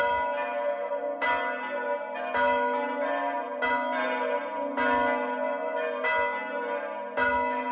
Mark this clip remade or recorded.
recorded